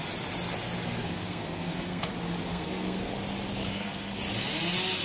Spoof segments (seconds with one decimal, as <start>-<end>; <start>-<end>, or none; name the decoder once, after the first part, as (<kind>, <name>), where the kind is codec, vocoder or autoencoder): 1.0-2.1 (codec, SNAC); 2.5-3.1; 3.6-4.1